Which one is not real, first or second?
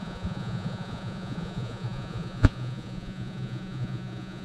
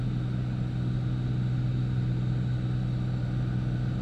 first